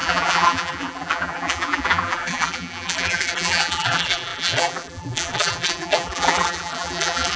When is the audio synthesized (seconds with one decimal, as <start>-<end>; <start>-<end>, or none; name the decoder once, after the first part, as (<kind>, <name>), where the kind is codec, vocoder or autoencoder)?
0.0-7.4 (vocoder, BigVGAN v2)

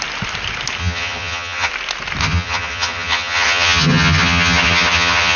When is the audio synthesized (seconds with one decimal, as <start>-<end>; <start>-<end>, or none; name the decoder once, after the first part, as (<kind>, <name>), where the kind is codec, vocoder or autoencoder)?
0.8-1.7 (vocoder, HiFi-GAN); 2.2-5.4

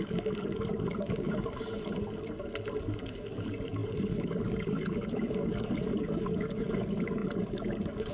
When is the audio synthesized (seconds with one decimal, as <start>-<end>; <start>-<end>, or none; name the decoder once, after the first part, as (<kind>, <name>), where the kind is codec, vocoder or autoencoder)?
0.0-1.7 (codec, DAC); 2.8-8.1

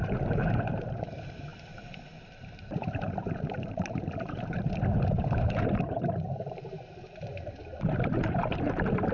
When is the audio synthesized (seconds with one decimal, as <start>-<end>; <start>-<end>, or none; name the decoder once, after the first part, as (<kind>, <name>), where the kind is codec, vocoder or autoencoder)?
0.0-7.7 (vocoder, BigVGAN v2); 8.3-9.1

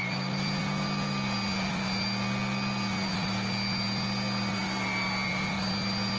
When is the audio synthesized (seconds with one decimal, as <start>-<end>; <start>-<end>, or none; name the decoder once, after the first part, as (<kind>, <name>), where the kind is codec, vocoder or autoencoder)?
none

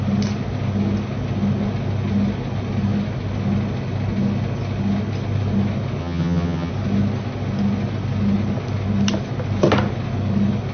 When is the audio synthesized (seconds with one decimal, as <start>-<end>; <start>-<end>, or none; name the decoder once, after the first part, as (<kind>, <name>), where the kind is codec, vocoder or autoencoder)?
6.0-6.7 (vocoder, HiFi-GAN)

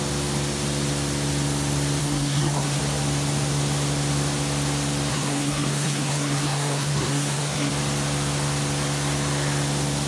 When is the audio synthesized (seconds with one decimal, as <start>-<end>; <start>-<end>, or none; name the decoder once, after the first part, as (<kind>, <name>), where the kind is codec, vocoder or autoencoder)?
2.0-2.8 (codec, SNAC); 5.1-7.7

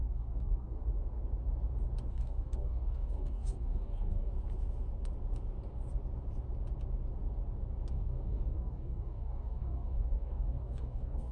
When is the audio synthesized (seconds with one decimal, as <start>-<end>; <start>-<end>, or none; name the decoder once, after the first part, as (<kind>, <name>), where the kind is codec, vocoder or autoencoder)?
0.0-0.8 (codec, DAC); 2.1-4.3; 7.9-11.3